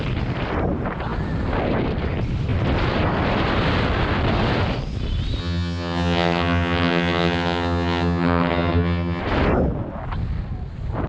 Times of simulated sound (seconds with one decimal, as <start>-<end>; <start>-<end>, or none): 5.4-9.2